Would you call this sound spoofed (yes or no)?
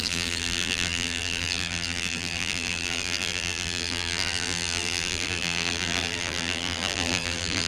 yes